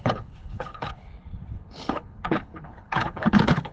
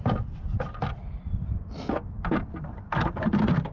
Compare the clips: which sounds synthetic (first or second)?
first